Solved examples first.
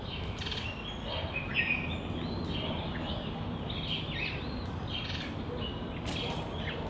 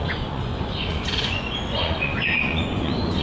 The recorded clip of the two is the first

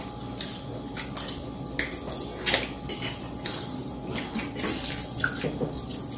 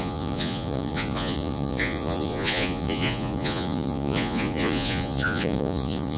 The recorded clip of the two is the first